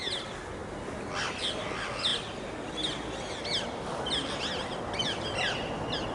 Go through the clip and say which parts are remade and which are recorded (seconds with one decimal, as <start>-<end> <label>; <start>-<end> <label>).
0.0-6.1 recorded